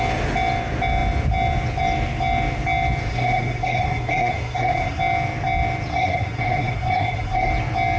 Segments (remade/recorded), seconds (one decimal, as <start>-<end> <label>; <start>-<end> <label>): 0.0-3.1 recorded; 3.1-5.0 remade; 5.0-5.9 recorded; 5.9-7.5 remade; 7.5-8.0 recorded